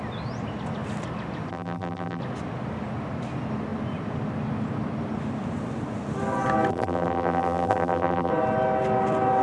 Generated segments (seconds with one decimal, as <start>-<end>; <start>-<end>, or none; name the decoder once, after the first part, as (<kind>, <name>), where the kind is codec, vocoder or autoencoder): 1.5-2.2 (vocoder, BigVGAN v2); 6.7-8.3